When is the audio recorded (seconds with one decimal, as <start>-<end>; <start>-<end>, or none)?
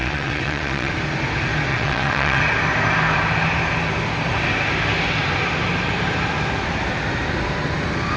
0.9-1.7; 2.4-8.2